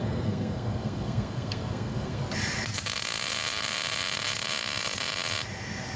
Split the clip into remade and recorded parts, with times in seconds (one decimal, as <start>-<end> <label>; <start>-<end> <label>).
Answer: 0.0-2.2 remade; 2.2-6.0 recorded